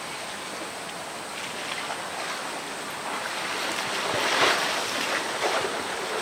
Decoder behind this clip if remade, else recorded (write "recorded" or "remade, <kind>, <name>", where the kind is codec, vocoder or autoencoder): recorded